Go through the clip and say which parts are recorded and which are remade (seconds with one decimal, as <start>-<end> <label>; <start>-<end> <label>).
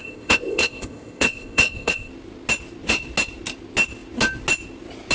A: 0.0-2.1 remade; 2.1-5.1 recorded